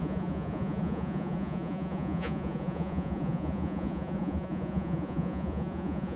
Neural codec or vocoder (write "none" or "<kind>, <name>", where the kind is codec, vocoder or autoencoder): vocoder, Vocos